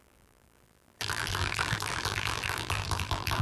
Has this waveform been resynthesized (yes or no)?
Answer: yes